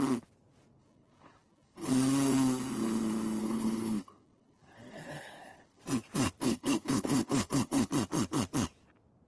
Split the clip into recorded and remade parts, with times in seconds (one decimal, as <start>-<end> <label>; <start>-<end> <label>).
0.0-0.8 recorded; 0.8-1.9 remade; 1.9-3.4 recorded; 3.4-5.8 remade; 5.8-6.4 recorded; 6.4-7.9 remade; 7.9-9.3 recorded